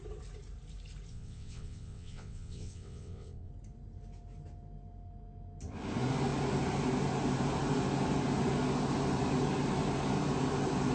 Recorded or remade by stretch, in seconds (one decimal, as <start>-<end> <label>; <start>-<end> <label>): 0.0-1.1 recorded; 1.1-3.5 remade; 3.5-10.9 recorded